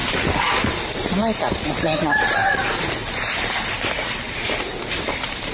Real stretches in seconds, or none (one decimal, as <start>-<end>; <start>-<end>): 0.7-2.4